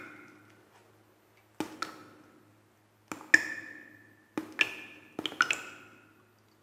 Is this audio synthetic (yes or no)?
no